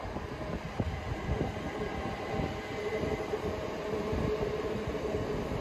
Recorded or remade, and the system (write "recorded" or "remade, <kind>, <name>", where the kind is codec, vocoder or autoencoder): recorded